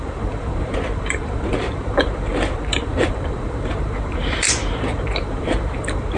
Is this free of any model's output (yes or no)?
no